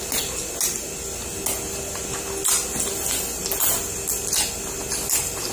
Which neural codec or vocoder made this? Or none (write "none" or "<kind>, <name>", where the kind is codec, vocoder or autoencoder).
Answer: none